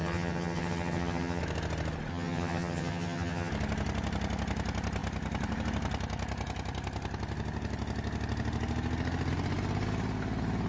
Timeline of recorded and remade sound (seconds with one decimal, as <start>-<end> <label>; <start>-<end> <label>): 0.0-1.4 remade; 1.4-2.1 recorded; 2.1-3.5 remade; 3.5-10.7 recorded